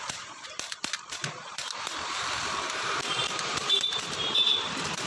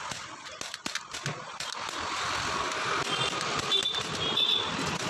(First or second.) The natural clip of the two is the second